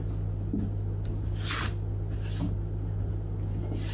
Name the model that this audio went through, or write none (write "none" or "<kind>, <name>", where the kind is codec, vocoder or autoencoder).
none